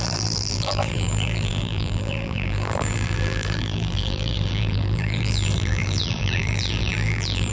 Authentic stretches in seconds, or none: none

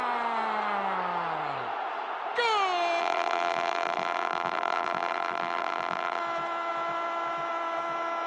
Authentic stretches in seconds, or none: 0.0-3.0; 6.2-8.3

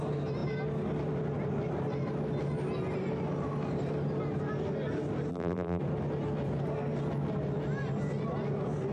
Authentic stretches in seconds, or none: 0.0-5.3; 5.8-8.9